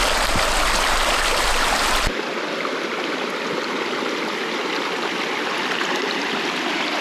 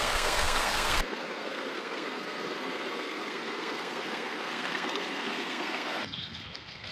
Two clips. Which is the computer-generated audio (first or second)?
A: second